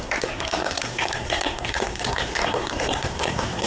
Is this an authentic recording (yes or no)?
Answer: no